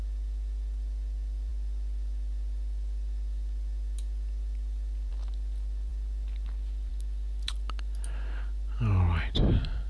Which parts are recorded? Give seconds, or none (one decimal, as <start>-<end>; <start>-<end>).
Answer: 0.0-9.9